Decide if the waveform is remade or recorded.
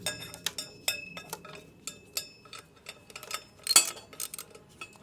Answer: recorded